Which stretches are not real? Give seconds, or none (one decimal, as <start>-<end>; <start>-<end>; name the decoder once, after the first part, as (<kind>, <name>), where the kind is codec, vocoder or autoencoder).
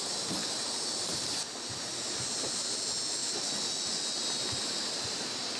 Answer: none